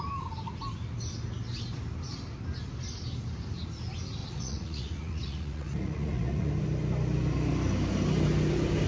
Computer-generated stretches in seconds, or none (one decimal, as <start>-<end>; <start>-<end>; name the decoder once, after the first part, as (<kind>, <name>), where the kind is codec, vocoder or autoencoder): 4.2-6.5 (vocoder, Vocos)